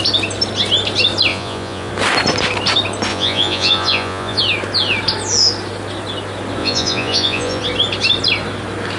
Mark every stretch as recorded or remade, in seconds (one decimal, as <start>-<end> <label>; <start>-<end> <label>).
0.0-1.3 recorded; 1.3-1.9 remade; 1.9-3.1 recorded; 3.1-4.4 remade; 4.4-6.6 recorded; 6.6-7.6 remade; 7.6-9.0 recorded